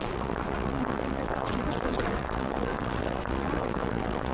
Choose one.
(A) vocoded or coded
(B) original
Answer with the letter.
A